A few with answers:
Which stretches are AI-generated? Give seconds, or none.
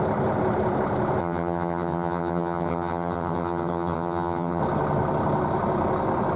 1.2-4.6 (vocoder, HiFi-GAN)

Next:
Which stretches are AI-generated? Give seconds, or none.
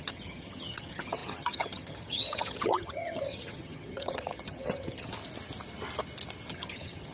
0.0-5.2 (vocoder, HiFi-GAN); 6.5-7.1